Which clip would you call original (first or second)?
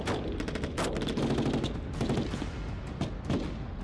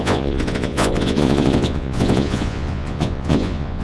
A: first